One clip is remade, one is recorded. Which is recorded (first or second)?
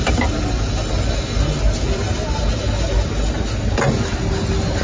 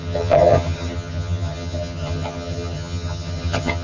first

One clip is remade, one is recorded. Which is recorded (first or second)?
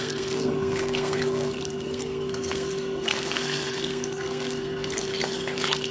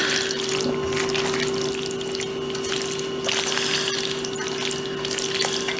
second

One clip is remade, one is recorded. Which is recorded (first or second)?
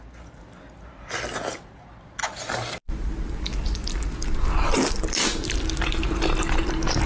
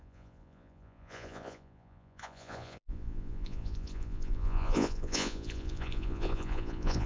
first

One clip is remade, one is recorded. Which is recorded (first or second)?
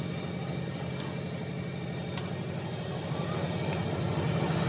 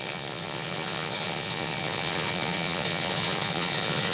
first